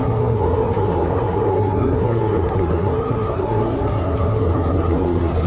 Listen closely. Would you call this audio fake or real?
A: fake